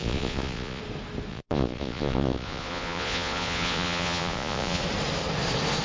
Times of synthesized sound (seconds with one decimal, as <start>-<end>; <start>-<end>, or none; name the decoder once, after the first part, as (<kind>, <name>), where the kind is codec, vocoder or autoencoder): 0.0-0.8 (vocoder, Vocos); 1.3-4.8